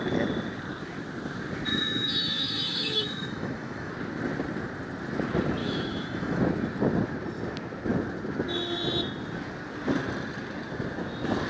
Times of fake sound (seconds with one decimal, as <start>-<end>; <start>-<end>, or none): 1.7-3.9; 5.6-6.4